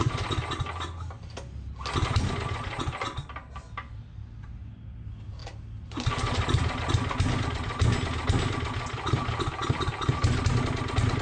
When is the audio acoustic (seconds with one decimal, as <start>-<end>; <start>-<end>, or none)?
0.0-11.2